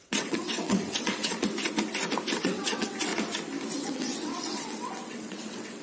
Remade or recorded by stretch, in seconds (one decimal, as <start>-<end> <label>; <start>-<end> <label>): 0.0-1.3 remade; 1.3-2.4 recorded; 2.4-3.1 remade; 3.1-3.8 recorded; 3.8-5.8 remade